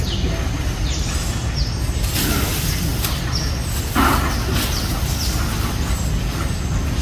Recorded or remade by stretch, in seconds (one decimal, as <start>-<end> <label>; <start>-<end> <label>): 0.0-1.6 recorded; 1.6-2.2 remade; 2.2-7.0 recorded